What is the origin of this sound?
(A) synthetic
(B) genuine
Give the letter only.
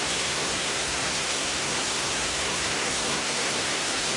A